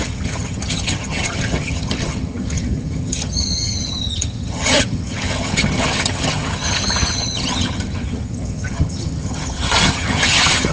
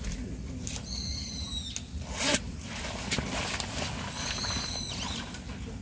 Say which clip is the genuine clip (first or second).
second